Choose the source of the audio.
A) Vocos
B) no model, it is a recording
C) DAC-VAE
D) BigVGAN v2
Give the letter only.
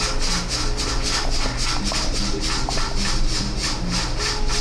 B